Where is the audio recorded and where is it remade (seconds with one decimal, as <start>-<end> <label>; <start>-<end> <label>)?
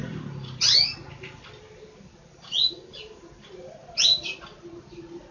0.0-5.3 recorded